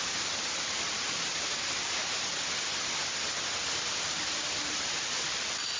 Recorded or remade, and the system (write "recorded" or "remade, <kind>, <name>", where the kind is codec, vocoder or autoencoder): recorded